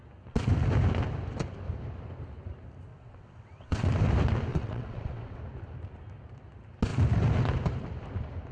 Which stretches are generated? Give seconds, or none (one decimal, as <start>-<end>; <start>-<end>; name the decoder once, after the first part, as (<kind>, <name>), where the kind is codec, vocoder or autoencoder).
2.9-3.9 (vocoder, WaveNeXt); 4.5-5.4

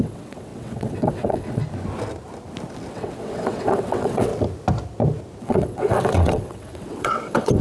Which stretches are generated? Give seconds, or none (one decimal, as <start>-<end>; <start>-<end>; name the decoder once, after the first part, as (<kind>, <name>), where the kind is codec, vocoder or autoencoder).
0.0-1.6 (vocoder, WaveNeXt); 2.9-4.3; 5.4-7.6

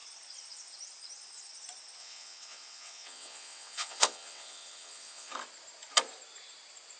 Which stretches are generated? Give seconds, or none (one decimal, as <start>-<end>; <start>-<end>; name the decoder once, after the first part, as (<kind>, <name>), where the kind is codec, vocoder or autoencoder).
2.0-5.3 (vocoder, WaveNeXt)